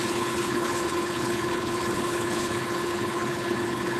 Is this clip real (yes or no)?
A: no